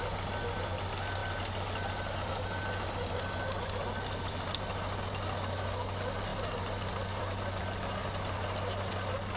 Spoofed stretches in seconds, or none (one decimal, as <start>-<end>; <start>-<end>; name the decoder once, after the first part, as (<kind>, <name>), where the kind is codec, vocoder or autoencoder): none